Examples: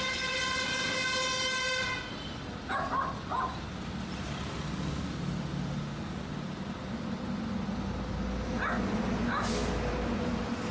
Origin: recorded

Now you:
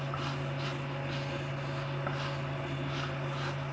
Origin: recorded